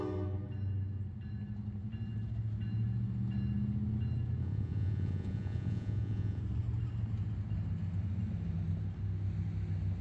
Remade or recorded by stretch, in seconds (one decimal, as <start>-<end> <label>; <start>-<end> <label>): 0.0-4.4 recorded; 4.4-6.4 remade; 6.4-10.0 recorded